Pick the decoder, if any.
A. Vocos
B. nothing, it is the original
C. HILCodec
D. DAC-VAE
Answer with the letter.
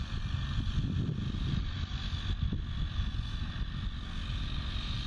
B